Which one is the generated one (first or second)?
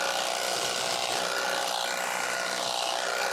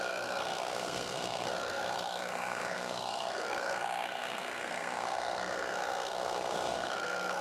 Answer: second